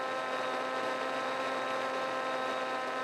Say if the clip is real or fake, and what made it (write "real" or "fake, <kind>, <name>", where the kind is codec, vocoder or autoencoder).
real